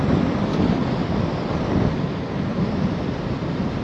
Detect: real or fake real